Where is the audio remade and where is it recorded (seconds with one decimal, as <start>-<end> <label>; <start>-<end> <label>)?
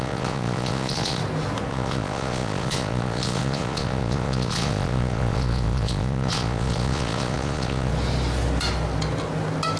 0.0-1.2 remade; 1.2-1.7 recorded; 1.7-7.9 remade; 7.9-9.8 recorded